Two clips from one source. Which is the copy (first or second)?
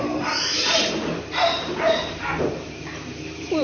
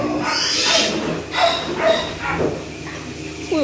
first